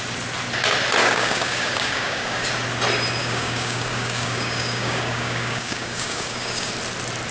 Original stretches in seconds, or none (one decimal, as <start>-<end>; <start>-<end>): 0.0-1.0; 2.5-3.2; 6.7-7.3